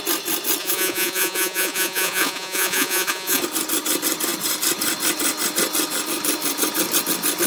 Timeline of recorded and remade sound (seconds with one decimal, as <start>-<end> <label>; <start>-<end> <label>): 0.0-0.6 recorded; 0.6-3.4 remade; 3.4-7.5 recorded